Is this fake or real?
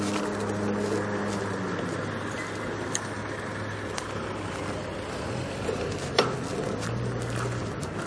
real